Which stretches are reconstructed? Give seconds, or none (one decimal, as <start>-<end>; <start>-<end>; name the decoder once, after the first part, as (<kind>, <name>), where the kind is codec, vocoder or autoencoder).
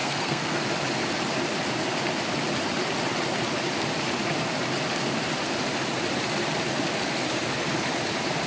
0.0-0.6 (codec, SNAC)